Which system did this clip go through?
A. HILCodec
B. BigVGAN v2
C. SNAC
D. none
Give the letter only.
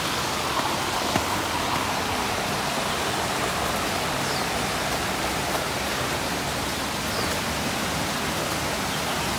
D